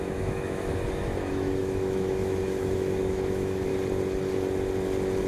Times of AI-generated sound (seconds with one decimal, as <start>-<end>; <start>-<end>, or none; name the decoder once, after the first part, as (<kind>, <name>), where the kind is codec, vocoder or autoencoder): 0.0-3.7 (autoencoder, DAC-VAE)